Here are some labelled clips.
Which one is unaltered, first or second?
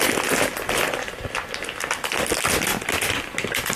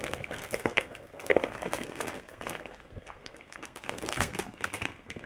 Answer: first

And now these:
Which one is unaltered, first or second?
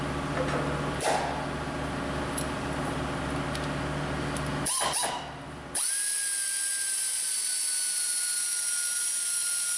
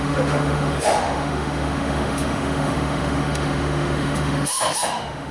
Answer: first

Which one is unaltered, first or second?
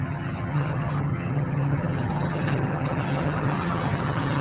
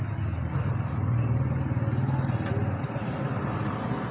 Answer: second